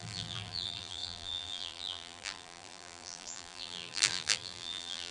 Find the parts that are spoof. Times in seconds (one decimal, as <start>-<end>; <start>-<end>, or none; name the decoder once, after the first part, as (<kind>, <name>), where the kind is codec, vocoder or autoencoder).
0.0-5.1 (vocoder, BigVGAN v2)